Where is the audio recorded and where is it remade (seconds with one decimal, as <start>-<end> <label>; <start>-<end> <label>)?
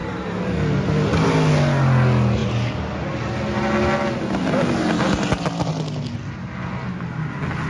0.0-0.6 remade; 0.6-7.7 recorded